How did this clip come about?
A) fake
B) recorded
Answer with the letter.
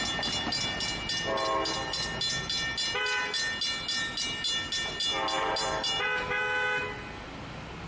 B